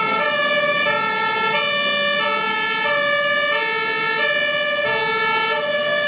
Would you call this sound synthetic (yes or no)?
no